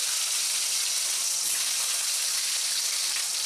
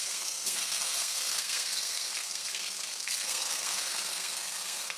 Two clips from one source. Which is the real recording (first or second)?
first